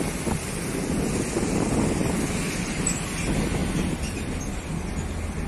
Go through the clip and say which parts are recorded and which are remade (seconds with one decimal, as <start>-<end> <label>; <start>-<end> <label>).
0.0-5.5 recorded